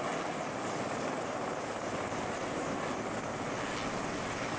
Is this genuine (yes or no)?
yes